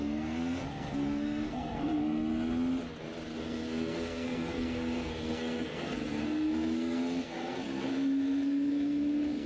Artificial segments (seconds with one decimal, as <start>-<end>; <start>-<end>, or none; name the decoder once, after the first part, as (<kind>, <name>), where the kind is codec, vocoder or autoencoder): 0.0-2.0 (codec, SNAC); 3.4-9.5